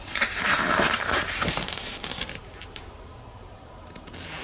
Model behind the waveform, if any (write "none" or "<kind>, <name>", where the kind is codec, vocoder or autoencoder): vocoder, BigVGAN v2